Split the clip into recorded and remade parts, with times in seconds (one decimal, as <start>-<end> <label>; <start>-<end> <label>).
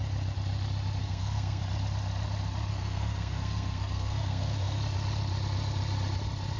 0.0-1.0 recorded; 1.0-1.6 remade; 1.6-2.7 recorded; 2.7-4.8 remade; 4.8-6.6 recorded